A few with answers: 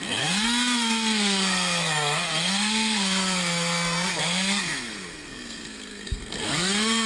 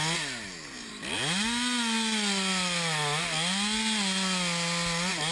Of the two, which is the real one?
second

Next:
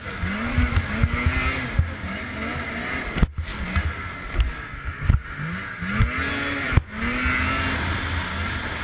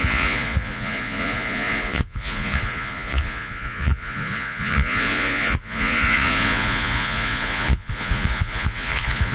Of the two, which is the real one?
first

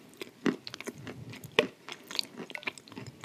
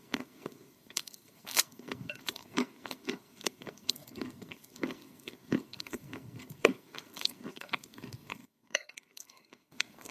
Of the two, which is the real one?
first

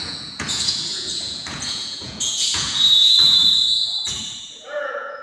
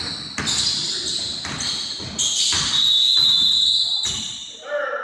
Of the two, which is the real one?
second